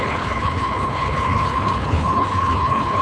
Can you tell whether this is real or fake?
fake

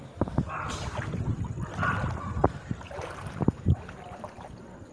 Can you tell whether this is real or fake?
real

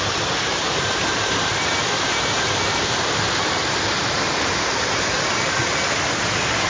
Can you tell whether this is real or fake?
fake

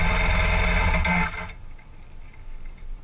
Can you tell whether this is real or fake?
real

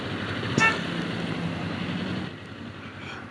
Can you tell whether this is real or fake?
real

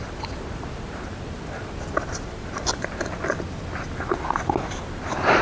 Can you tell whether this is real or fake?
real